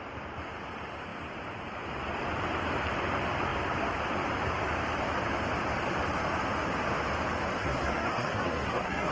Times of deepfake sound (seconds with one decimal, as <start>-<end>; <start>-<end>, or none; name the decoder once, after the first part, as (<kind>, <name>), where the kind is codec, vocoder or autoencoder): 7.6-9.1 (codec, SNAC)